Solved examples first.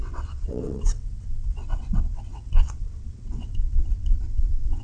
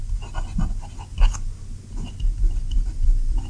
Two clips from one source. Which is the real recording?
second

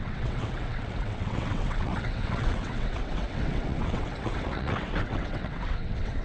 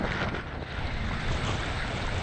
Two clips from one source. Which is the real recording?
second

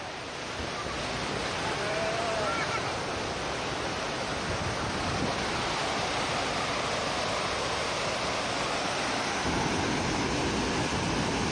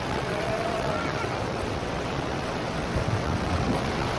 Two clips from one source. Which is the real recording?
first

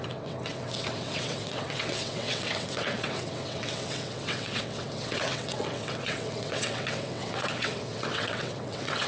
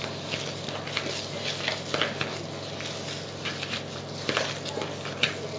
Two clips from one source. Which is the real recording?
second